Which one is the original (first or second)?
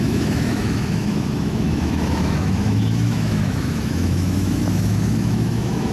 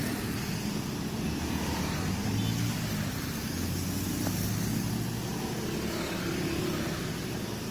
second